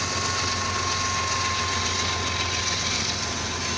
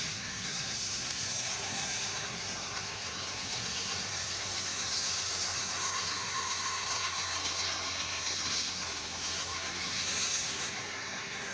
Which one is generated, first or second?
second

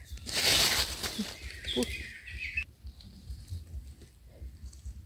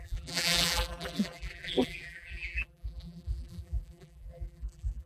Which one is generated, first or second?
second